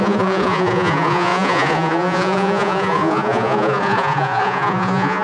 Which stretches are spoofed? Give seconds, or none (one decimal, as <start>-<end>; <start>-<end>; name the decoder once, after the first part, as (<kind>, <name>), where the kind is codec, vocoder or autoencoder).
0.0-5.2 (vocoder, Vocos)